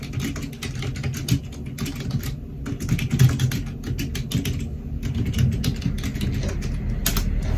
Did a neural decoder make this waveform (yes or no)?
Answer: no